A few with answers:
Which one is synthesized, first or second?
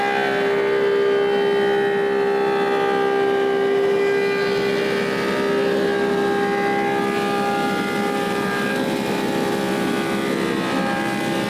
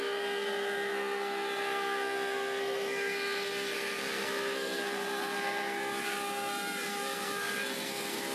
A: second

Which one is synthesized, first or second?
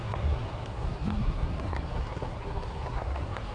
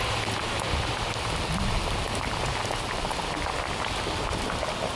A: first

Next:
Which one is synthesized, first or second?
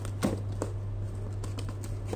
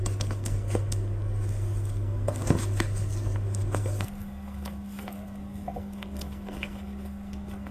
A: second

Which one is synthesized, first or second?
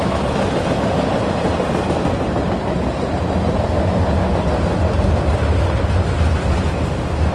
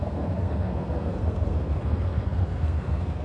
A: second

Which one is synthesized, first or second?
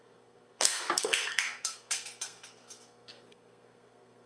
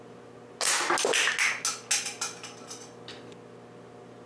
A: first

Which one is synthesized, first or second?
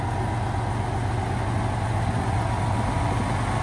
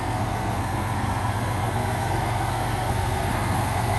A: second